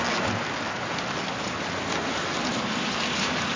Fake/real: real